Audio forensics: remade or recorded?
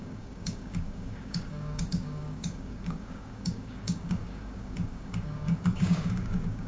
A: remade